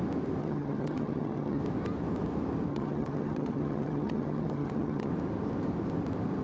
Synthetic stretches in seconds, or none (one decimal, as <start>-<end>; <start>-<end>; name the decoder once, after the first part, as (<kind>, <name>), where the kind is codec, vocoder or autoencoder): 0.4-1.6 (vocoder, HiFi-GAN); 2.7-5.1